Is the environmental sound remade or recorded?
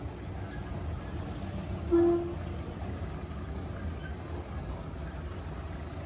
recorded